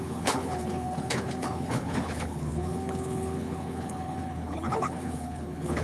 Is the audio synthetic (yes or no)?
yes